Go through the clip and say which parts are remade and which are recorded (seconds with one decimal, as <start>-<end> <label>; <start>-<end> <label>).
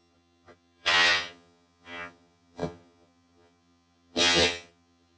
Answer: 0.0-5.2 remade